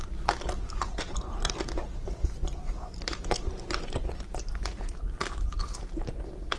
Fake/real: real